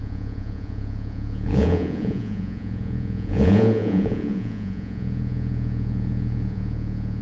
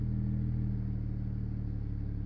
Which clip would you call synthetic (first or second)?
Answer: first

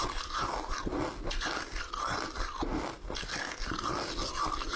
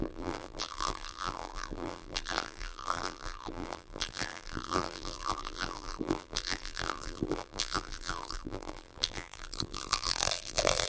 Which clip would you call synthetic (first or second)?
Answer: second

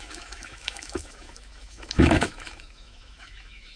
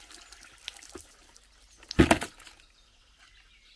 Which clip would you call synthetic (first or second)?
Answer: first